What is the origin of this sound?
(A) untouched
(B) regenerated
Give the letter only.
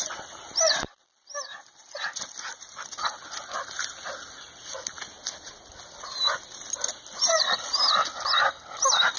A